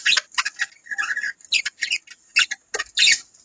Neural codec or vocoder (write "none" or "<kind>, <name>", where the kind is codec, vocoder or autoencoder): none